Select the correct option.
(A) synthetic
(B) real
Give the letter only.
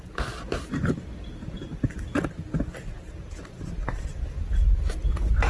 B